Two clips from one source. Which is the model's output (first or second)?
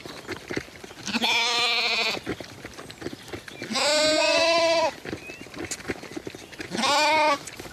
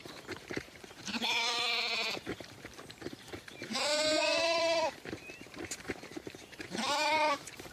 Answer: second